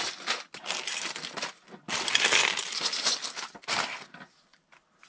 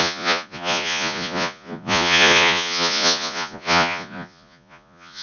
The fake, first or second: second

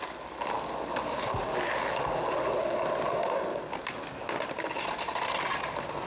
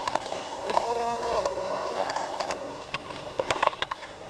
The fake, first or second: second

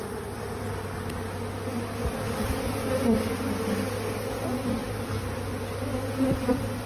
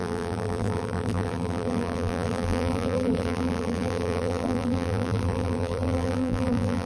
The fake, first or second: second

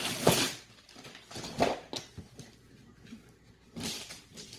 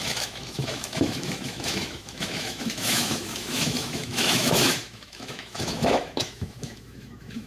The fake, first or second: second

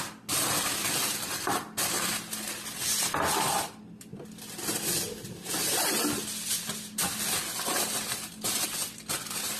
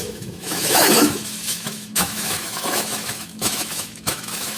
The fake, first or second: second